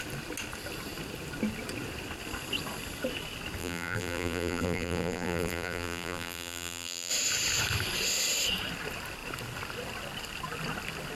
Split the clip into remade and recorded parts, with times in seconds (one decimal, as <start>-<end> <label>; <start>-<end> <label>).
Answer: 0.0-3.6 recorded; 3.6-7.1 remade; 7.1-11.1 recorded